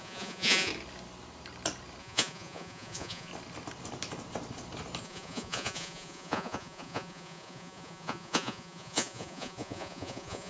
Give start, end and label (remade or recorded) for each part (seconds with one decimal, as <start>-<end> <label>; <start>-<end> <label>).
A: 0.0-0.7 remade; 0.7-2.0 recorded; 2.0-3.3 remade; 3.3-5.0 recorded; 5.0-10.5 remade